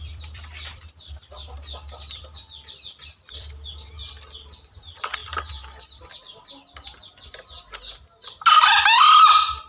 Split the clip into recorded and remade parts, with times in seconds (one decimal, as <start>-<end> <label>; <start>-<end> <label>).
0.0-5.2 remade; 5.2-9.7 recorded